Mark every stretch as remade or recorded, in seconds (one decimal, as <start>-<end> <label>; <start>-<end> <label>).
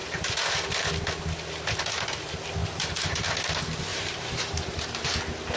0.0-0.9 remade; 0.9-2.6 recorded; 2.6-3.2 remade; 3.2-3.9 recorded; 3.9-5.1 remade; 5.1-5.6 recorded